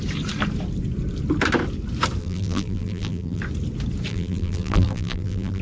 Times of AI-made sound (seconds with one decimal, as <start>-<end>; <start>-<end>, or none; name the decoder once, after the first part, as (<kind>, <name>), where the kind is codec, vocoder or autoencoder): 2.2-3.4 (vocoder, BigVGAN v2); 4.1-5.6